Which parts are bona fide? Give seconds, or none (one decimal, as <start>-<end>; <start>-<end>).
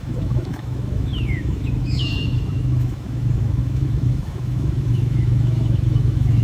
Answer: none